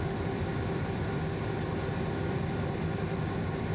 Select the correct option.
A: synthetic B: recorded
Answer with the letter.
B